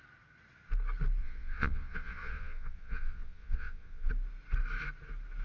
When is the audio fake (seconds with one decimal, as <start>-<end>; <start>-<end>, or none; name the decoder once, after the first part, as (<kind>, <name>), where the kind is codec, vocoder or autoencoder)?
1.2-4.1 (vocoder, Vocos)